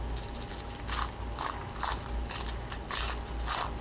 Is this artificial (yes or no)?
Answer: no